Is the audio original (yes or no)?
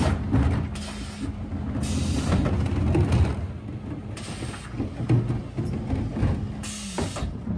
yes